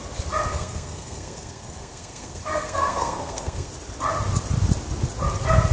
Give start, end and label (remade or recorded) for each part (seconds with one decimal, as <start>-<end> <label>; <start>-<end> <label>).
0.0-0.5 recorded; 0.5-3.7 remade; 3.7-5.7 recorded